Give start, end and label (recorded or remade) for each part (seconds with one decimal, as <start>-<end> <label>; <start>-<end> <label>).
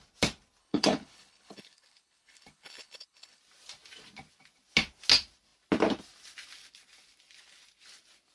0.0-0.6 recorded; 0.6-3.4 remade; 3.4-8.3 recorded